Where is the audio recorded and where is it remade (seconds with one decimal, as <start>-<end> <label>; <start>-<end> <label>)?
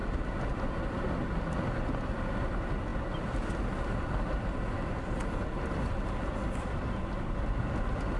0.0-8.2 recorded